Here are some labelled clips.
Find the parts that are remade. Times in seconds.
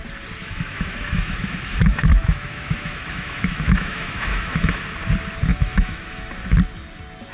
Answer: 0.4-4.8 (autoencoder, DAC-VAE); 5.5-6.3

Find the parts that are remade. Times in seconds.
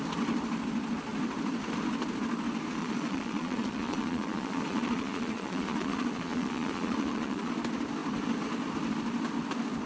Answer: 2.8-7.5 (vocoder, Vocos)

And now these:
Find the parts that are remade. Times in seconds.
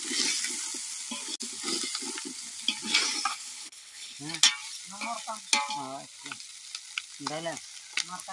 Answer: 3.3-4.2 (codec, HILCodec)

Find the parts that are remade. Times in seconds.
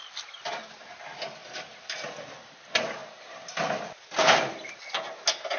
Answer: none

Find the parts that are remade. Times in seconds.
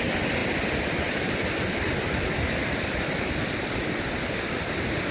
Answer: none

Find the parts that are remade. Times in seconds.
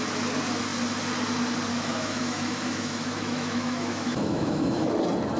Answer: 1.7-4.9 (autoencoder, DAC-VAE)